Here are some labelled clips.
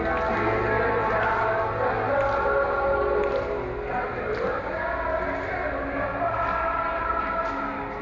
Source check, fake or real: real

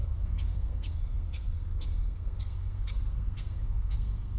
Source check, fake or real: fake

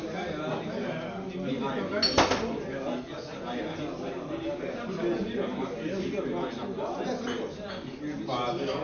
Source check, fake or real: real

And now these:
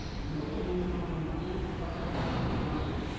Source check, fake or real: real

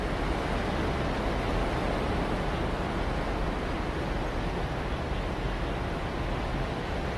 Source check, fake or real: real